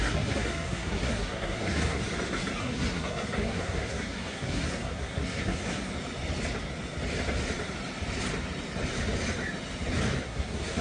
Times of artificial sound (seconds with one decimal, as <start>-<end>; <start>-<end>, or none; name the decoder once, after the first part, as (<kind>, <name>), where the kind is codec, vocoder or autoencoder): 0.0-2.0 (codec, SNAC); 2.6-5.9; 10.2-10.8